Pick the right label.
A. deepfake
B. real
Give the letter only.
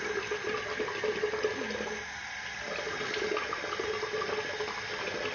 B